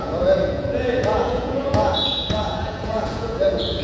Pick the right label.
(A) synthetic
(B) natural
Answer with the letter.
A